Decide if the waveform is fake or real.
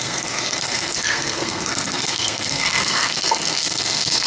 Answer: fake